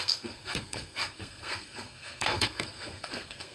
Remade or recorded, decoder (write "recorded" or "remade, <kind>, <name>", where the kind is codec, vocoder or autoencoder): remade, codec, SNAC